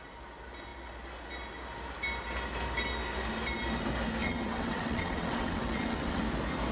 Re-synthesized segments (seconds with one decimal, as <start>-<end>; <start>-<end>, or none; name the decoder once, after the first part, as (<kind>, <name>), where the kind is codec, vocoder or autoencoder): 4.2-6.2 (vocoder, WaveNeXt)